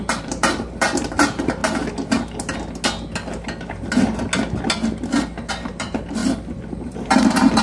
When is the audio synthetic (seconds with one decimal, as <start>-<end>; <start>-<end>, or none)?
0.0-1.6; 5.5-6.2; 6.7-7.6